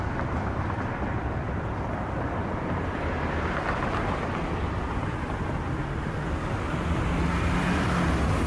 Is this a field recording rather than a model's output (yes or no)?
yes